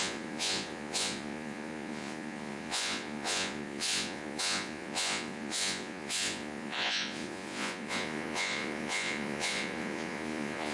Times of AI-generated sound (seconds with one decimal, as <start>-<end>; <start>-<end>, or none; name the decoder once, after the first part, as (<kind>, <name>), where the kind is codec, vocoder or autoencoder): 0.0-10.7 (vocoder, Vocos)